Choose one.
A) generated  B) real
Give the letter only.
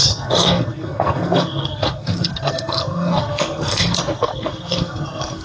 A